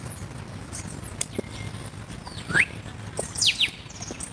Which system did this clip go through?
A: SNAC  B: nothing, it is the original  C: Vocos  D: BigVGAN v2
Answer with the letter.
B